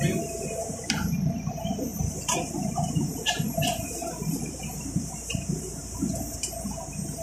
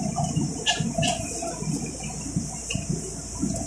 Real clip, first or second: second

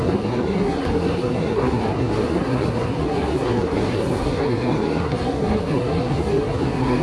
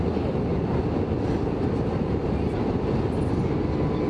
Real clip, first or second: second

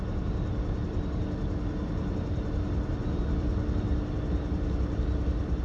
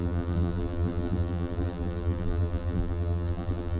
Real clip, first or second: first